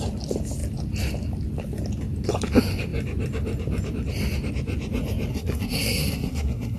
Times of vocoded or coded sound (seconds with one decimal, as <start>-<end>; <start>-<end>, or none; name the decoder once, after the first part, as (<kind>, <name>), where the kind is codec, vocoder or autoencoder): 5.3-6.8 (codec, SNAC)